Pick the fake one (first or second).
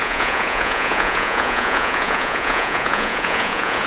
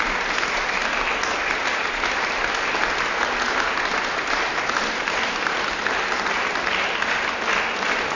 first